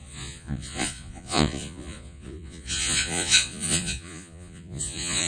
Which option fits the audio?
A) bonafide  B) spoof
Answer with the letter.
B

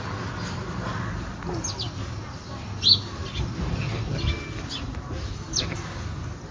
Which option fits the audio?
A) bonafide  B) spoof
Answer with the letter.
A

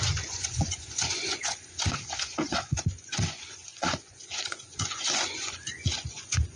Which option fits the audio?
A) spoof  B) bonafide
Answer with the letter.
A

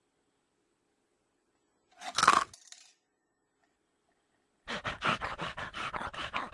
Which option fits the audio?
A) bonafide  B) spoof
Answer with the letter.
A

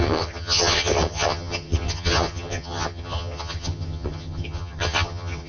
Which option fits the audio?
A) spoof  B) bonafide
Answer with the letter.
A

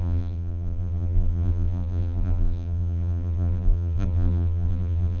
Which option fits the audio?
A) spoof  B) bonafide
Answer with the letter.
A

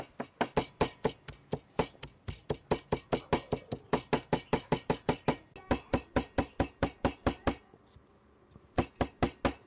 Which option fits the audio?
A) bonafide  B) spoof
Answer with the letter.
A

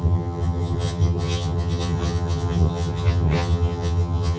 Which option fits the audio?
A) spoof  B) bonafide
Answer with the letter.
A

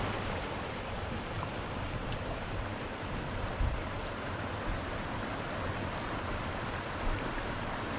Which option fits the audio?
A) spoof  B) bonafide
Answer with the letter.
A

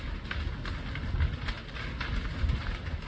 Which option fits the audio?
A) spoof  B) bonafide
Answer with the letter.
B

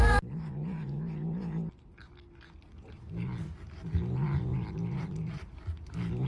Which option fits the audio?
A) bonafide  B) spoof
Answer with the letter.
A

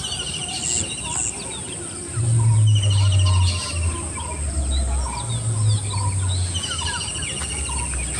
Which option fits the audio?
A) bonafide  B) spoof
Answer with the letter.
A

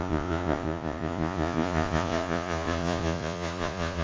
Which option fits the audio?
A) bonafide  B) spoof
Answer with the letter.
B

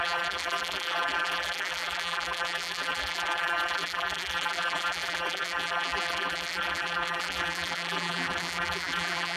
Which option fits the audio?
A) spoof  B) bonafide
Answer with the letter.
A